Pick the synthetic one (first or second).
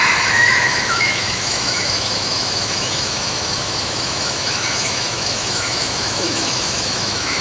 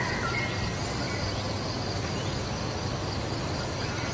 first